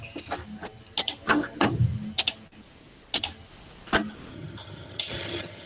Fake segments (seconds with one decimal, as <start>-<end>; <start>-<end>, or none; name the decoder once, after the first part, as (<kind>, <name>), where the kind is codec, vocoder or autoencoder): 4.3-5.7 (vocoder, HiFi-GAN)